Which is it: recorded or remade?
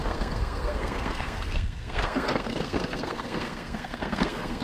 remade